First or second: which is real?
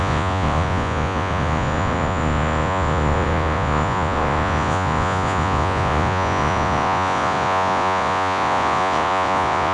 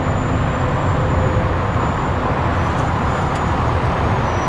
second